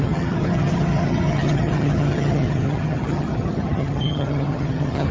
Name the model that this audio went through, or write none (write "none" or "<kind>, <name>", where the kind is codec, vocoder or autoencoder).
vocoder, HiFi-GAN